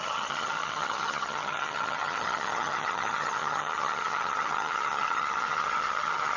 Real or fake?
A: fake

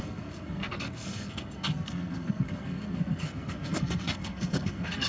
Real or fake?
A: fake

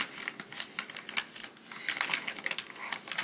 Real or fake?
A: real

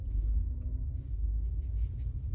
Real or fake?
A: real